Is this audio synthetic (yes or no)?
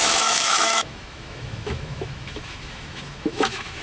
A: yes